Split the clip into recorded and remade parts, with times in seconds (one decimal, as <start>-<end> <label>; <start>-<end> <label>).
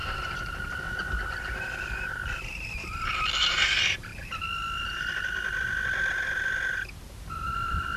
0.0-3.4 recorded; 3.4-4.1 remade; 4.1-8.0 recorded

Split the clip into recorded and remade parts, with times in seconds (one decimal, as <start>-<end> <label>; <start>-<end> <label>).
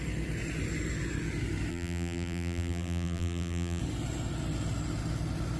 0.0-1.7 recorded; 1.7-3.8 remade; 3.8-5.6 recorded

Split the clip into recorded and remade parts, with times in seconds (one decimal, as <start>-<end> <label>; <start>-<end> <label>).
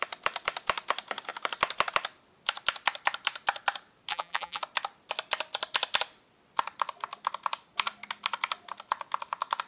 0.0-4.1 recorded; 4.1-4.6 remade; 4.6-9.7 recorded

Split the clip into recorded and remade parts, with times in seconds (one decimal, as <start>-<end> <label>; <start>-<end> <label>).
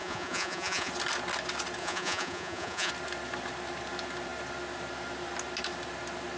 0.0-0.9 remade; 0.9-1.8 recorded; 1.8-2.9 remade; 2.9-6.4 recorded